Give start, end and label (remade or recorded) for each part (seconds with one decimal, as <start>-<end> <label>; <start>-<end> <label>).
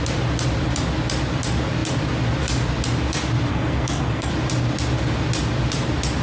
0.0-3.5 recorded; 3.5-4.3 remade; 4.3-6.2 recorded